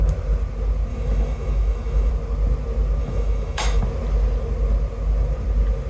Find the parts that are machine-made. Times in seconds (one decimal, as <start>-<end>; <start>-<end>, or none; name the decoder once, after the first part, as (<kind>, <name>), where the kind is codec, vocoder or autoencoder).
0.9-2.1 (autoencoder, DAC-VAE); 3.0-3.8